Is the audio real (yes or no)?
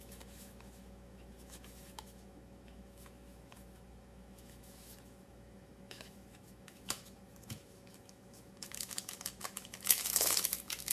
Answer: no